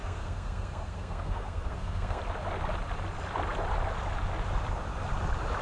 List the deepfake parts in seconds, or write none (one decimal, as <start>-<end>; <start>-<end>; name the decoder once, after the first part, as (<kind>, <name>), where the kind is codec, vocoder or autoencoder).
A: 0.0-2.2 (codec, SNAC)

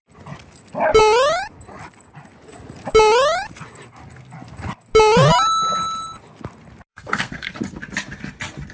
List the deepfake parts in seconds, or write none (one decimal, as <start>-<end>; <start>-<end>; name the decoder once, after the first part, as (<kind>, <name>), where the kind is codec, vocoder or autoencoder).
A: 6.9-7.5 (codec, SNAC)

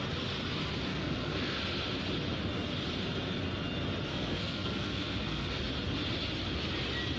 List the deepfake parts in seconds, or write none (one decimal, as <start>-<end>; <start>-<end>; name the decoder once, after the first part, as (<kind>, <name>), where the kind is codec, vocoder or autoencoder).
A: 0.9-1.6 (codec, SNAC); 4.1-5.6

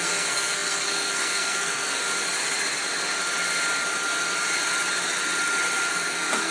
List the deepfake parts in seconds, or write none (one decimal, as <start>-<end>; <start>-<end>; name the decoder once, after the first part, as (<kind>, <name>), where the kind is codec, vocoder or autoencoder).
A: 0.0-2.0 (codec, SNAC); 5.9-6.5

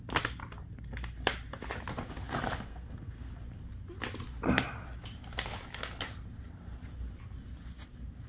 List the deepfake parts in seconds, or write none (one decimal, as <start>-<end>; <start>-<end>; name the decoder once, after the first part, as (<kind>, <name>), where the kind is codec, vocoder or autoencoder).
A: 2.7-3.3 (codec, SNAC)

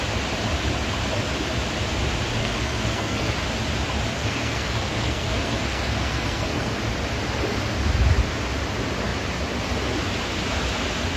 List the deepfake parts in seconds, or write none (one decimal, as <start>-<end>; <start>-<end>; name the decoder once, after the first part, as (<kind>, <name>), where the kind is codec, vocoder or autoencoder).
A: 2.4-3.3 (codec, SNAC); 4.1-6.8

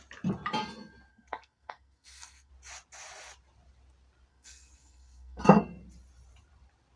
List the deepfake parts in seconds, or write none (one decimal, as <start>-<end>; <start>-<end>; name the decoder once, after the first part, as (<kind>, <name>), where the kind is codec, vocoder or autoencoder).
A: 1.1-2.5 (codec, SNAC); 4.3-5.6

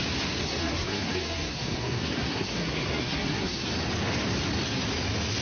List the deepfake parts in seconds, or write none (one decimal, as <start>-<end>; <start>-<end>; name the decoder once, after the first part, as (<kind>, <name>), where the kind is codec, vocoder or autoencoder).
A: 0.4-3.6 (codec, SNAC)